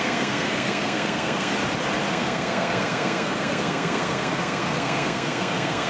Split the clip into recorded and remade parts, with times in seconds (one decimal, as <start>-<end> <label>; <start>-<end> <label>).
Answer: 0.0-1.5 remade; 1.5-2.1 recorded; 2.1-5.9 remade